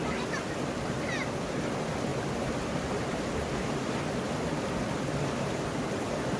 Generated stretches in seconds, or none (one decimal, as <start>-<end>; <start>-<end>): 2.1-5.5